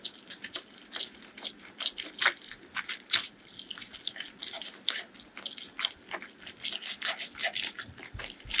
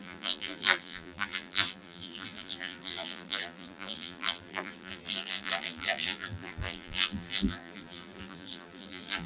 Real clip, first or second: first